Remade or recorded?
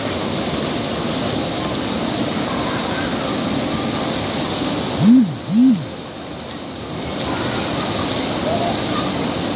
recorded